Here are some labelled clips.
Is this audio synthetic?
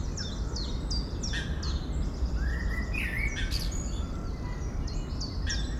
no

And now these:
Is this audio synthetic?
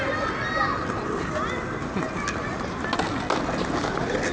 no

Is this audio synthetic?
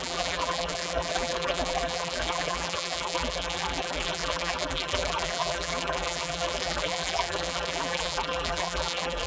yes